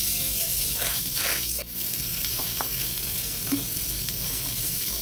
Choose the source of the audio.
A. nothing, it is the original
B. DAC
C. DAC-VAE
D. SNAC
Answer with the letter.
D